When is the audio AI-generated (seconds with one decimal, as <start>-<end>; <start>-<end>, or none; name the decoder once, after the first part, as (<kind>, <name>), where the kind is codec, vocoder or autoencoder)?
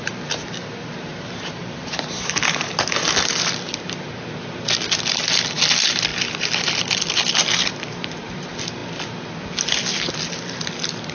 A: 1.1-3.0 (vocoder, BigVGAN v2)